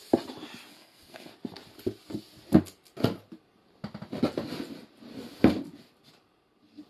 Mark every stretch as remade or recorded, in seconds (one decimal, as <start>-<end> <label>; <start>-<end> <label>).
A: 0.0-0.7 recorded; 0.7-1.3 remade; 1.3-6.9 recorded